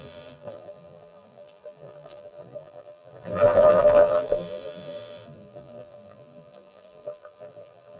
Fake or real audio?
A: fake